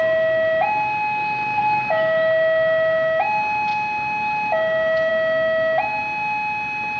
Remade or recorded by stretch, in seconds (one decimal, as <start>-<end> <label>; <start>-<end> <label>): 0.0-7.0 recorded